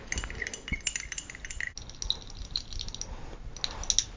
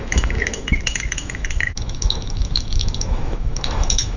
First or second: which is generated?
second